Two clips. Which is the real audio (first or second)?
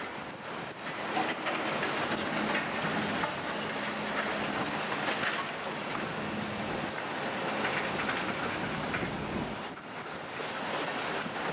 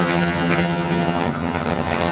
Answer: first